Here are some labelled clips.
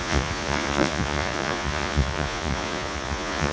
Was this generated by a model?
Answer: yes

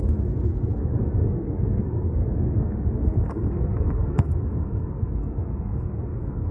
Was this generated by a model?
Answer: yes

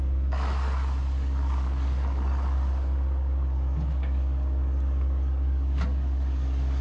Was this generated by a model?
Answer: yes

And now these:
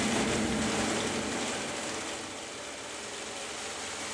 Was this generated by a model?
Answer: no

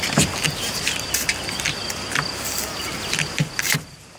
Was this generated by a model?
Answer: no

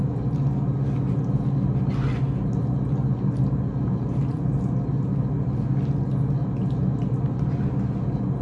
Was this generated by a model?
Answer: no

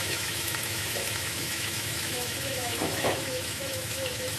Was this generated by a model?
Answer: yes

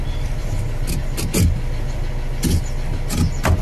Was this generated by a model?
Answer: no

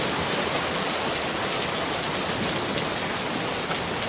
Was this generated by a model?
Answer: no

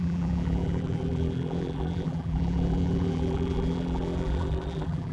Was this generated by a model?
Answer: yes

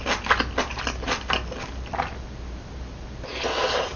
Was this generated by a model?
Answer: no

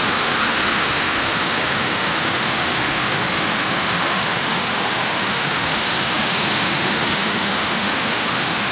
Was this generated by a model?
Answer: yes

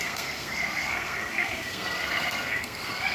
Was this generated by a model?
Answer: yes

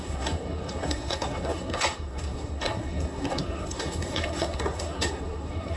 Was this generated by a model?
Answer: yes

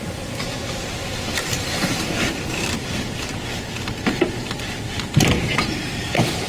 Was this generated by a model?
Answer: yes